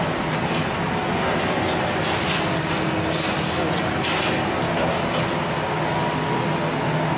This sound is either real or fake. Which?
real